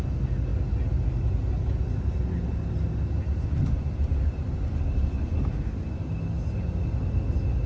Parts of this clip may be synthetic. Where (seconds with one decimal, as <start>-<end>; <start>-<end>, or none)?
none